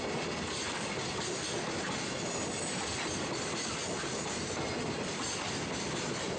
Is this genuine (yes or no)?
yes